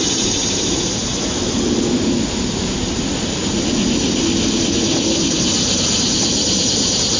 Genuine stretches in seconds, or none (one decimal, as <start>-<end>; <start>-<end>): 1.1-5.4